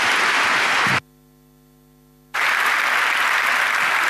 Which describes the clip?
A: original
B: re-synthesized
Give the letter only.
A